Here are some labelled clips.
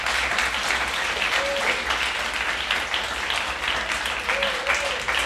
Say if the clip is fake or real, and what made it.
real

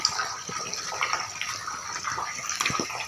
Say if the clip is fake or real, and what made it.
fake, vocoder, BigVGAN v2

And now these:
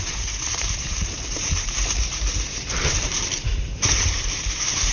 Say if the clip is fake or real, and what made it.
fake, vocoder, BigVGAN v2